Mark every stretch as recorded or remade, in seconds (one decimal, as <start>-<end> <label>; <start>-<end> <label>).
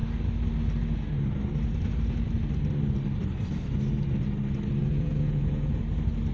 0.0-4.8 recorded; 4.8-5.8 remade; 5.8-6.3 recorded